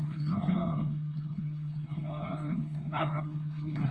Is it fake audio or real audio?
fake